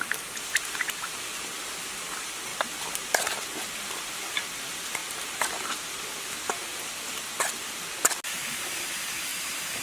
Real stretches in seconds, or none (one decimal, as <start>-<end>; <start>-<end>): 0.0-5.0; 5.5-9.3